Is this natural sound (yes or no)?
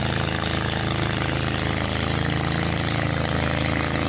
yes